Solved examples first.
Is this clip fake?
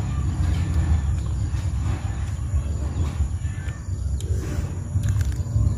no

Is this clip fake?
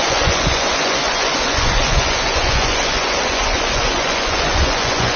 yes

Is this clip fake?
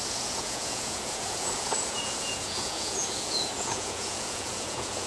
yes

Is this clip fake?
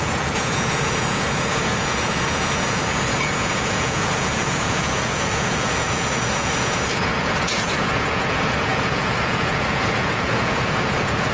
yes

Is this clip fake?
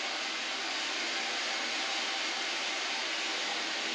no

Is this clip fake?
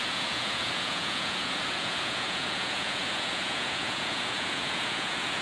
yes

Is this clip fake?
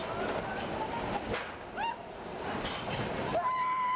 no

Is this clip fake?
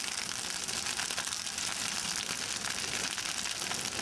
no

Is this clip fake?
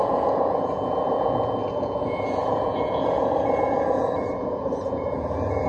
yes